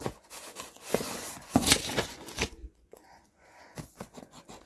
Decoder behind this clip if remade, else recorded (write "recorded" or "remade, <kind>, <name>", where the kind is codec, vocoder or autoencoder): remade, vocoder, Vocos